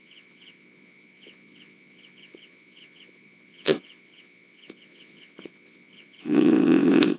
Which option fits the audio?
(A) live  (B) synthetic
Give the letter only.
B